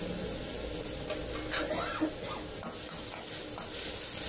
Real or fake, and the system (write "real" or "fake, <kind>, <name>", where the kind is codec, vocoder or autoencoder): real